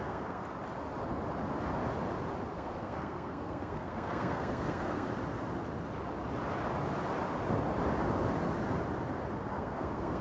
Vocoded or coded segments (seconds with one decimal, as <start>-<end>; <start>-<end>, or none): 0.0-0.4; 2.5-5.1; 9.5-10.2